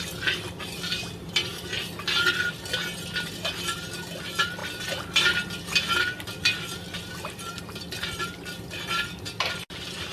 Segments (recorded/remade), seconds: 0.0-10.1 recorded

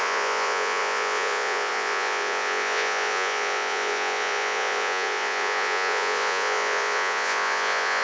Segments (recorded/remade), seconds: 0.0-8.0 remade